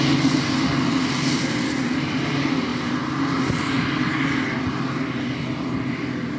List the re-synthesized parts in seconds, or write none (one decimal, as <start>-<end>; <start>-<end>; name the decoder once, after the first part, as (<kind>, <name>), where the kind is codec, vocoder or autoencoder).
none